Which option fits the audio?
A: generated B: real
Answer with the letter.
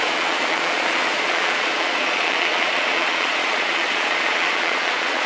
A